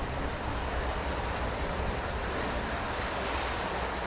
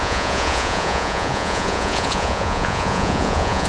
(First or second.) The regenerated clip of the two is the second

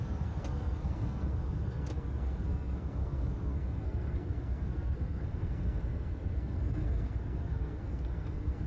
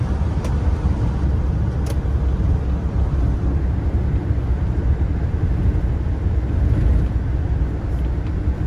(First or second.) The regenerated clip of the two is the first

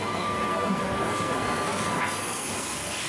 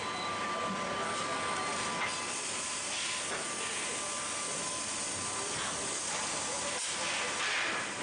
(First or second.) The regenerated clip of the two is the first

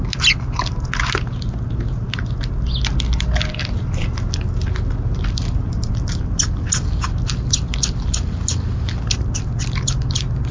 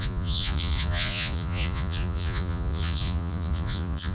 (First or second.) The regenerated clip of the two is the second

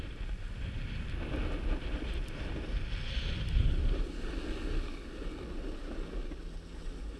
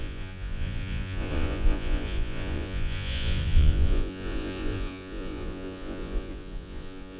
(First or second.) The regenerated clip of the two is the second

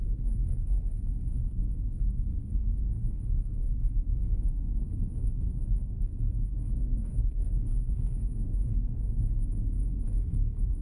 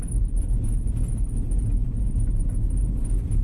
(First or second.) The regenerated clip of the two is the first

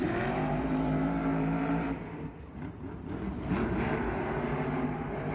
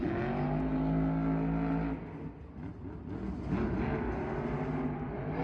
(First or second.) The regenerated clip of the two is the first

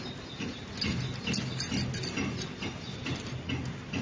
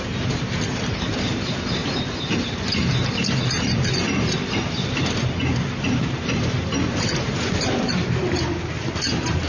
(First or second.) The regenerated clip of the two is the second